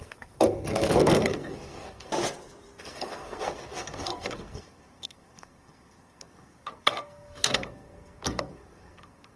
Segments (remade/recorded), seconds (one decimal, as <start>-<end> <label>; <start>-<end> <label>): 0.0-2.1 remade; 2.1-2.8 recorded; 2.8-9.4 remade